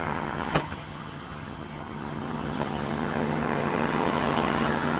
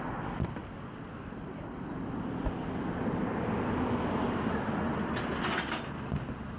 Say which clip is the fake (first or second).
first